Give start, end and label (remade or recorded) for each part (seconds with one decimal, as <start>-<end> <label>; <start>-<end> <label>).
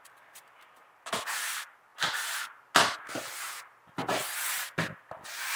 0.0-5.6 recorded